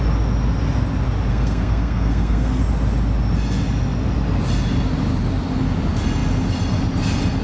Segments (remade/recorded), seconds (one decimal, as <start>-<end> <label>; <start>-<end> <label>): 0.0-1.3 recorded; 1.3-2.6 remade; 2.6-7.4 recorded